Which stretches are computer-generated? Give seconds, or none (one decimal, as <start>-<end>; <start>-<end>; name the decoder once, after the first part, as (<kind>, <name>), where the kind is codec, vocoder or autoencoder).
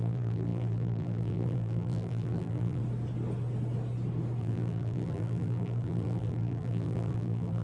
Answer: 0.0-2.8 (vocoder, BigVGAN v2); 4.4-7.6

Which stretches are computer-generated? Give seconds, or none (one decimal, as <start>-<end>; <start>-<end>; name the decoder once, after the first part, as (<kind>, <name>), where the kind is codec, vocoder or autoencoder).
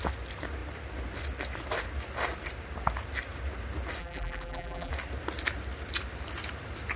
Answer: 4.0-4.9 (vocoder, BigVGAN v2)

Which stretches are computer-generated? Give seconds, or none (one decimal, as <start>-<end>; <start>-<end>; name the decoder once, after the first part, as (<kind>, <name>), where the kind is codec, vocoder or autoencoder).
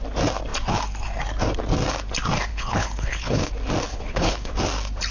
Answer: 2.5-3.5 (codec, HILCodec); 3.9-4.5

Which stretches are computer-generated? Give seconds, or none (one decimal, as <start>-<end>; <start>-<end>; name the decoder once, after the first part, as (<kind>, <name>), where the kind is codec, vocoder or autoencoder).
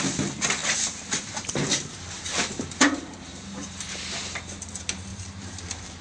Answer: 0.6-4.2 (vocoder, BigVGAN v2); 5.1-6.0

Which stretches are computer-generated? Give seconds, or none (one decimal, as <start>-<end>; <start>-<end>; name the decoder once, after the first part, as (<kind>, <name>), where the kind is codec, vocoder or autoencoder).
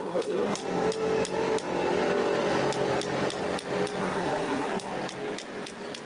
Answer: 0.0-0.6 (codec, SNAC); 4.0-4.9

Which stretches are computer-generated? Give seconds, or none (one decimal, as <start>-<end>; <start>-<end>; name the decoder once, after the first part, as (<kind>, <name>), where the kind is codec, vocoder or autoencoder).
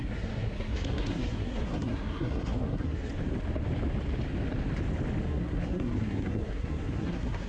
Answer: 0.0-3.1 (codec, SNAC); 5.2-7.5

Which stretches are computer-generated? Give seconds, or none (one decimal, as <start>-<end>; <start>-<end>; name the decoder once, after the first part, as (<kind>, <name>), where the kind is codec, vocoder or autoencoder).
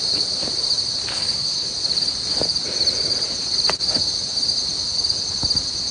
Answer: 1.1-1.7 (codec, HILCodec)